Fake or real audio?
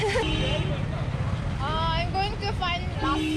real